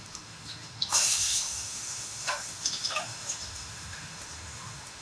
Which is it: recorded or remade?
remade